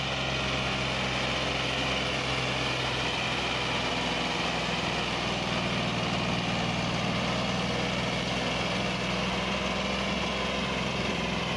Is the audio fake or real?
real